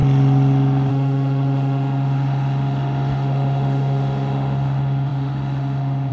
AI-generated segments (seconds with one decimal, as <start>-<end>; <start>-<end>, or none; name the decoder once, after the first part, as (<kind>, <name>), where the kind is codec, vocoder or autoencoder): 0.9-6.1 (autoencoder, DAC-VAE)